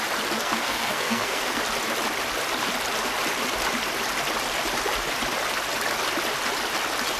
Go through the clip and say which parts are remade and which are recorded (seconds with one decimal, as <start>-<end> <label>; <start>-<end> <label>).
0.0-0.4 recorded; 0.4-1.6 remade; 1.6-7.2 recorded